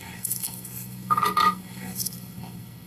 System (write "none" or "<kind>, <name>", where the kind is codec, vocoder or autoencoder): codec, SNAC